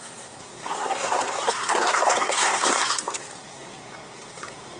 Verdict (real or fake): fake